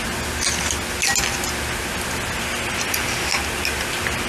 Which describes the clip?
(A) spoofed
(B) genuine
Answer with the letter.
B